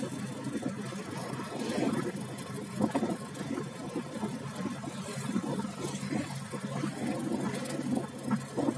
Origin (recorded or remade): recorded